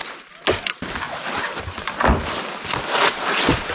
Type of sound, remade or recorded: recorded